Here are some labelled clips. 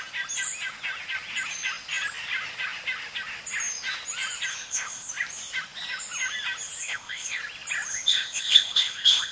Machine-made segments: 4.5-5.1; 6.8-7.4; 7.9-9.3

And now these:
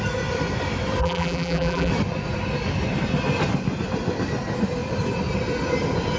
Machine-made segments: 1.0-1.9

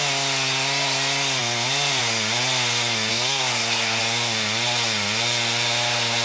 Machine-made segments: 3.1-4.0